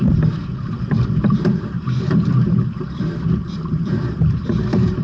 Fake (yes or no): yes